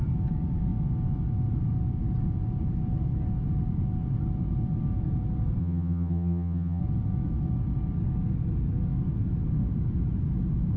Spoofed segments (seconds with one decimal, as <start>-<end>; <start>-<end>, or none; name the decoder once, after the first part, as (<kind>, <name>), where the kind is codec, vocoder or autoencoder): 5.6-6.8 (vocoder, HiFi-GAN)